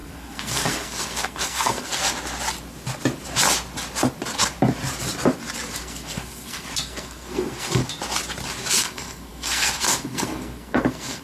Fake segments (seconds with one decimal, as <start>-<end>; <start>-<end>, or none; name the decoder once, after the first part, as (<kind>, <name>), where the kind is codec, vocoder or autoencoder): 0.0-2.0 (codec, SNAC); 5.8-7.8; 8.7-11.2